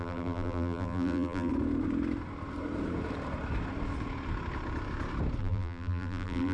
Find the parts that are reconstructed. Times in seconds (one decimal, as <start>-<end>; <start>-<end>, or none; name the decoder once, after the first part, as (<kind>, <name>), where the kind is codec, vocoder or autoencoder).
0.0-1.5 (vocoder, BigVGAN v2); 5.4-6.5

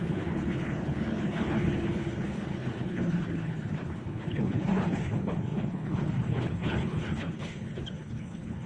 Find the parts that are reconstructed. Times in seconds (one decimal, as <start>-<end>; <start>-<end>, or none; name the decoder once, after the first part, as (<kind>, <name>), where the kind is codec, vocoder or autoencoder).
0.0-8.7 (codec, HILCodec)

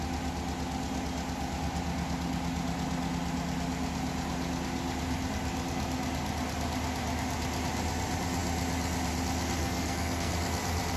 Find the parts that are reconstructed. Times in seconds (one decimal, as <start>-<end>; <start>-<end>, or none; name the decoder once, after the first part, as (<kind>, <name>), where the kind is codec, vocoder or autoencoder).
9.6-10.3 (codec, SNAC)

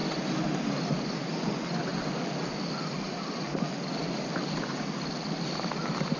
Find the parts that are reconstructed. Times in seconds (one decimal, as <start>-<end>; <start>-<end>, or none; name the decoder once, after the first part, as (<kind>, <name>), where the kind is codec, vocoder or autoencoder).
none

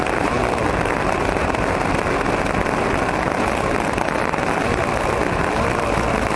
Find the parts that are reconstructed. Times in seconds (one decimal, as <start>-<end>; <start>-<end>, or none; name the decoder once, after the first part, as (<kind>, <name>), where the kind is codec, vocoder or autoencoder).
none

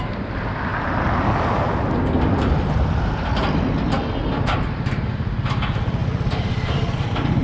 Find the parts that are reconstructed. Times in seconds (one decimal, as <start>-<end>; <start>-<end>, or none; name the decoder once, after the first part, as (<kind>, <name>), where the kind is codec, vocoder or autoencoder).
none